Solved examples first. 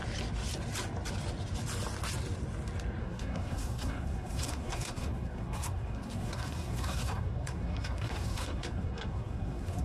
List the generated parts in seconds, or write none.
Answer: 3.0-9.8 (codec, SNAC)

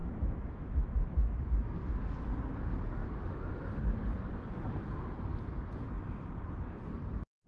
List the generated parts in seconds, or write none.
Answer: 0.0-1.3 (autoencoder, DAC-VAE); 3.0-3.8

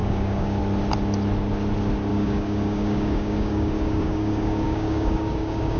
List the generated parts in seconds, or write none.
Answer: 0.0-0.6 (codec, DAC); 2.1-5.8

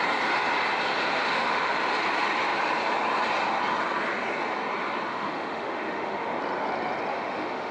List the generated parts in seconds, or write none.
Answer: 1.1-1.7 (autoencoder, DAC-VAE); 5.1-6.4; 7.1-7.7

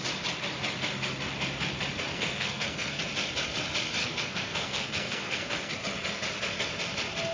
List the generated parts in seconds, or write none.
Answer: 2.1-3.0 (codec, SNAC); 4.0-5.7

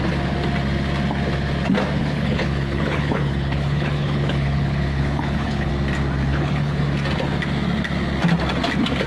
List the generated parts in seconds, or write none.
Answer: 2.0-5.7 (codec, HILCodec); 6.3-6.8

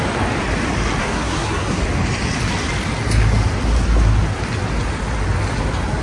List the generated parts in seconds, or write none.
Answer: 1.0-1.8 (codec, SNAC)